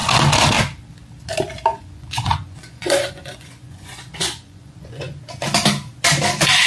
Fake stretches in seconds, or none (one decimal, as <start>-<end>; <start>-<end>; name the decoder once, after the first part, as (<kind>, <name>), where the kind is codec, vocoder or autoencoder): 1.7-5.2 (vocoder, Vocos)